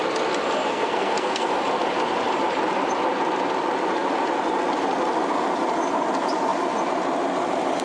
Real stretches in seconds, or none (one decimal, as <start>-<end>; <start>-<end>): 0.0-0.7; 1.5-7.8